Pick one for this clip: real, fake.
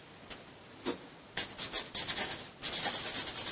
real